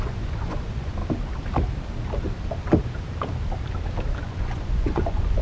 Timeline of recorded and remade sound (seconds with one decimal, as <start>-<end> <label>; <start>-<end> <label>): 0.0-1.0 remade; 1.0-4.2 recorded; 4.2-5.4 remade